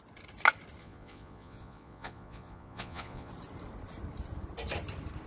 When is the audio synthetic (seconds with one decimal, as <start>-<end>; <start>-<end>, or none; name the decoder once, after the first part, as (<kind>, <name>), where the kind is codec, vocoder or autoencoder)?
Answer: 0.8-3.3 (vocoder, Vocos)